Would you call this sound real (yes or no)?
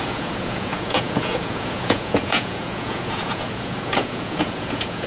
no